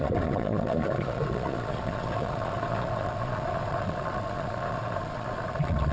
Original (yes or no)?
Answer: no